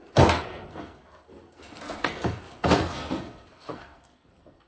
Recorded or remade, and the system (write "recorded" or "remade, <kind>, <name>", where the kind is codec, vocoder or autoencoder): remade, codec, SNAC